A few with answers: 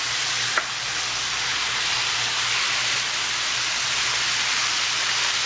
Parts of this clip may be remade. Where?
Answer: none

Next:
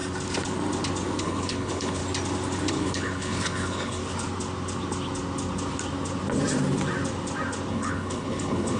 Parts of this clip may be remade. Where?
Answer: 1.2-2.0 (codec, HILCodec); 2.7-4.0; 7.7-8.8

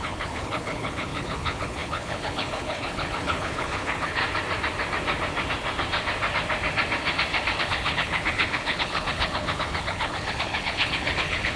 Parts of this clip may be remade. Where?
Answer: 0.0-4.2 (codec, HILCodec); 7.6-11.6

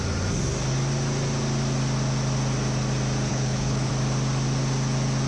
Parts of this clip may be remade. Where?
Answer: 3.3-3.9 (codec, HILCodec)

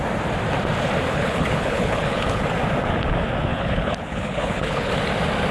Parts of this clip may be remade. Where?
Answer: 1.1-2.4 (codec, HILCodec); 3.5-5.0

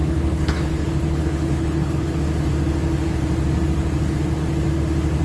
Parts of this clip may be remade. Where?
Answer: 0.0-2.2 (codec, HILCodec)